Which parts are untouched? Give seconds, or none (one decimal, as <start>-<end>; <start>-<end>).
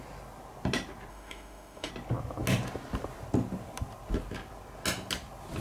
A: 0.0-1.1; 1.9-5.6